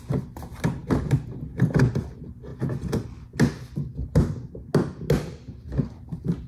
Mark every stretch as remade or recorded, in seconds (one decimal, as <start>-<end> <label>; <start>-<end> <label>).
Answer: 0.0-6.5 recorded